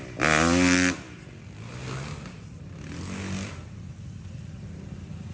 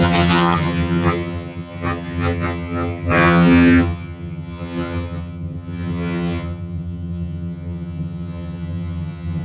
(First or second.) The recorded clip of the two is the first